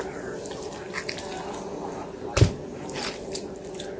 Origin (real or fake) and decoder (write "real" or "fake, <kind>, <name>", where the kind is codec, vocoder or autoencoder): real